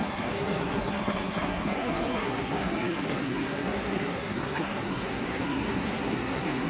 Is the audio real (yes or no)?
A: no